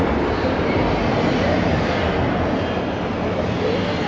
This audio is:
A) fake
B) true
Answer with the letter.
B